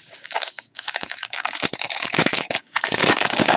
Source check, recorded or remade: remade